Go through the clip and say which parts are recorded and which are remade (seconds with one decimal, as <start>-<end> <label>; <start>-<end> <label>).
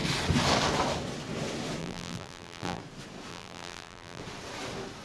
0.0-1.8 recorded; 1.8-2.8 remade; 2.8-3.3 recorded; 3.3-4.2 remade; 4.2-5.0 recorded